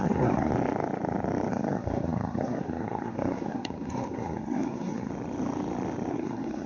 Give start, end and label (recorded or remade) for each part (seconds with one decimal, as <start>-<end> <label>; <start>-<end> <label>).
0.0-0.5 remade; 0.5-1.5 recorded; 1.5-5.1 remade; 5.1-6.1 recorded; 6.1-6.7 remade